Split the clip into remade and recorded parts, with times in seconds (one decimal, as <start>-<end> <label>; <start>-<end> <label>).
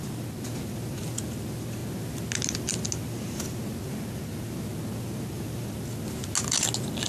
0.0-7.1 recorded